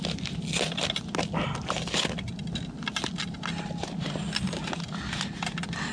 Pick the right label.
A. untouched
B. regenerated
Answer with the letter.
A